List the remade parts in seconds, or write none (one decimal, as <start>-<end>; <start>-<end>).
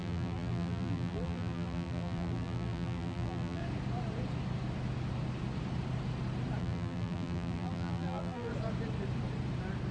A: 0.0-3.6; 6.6-8.5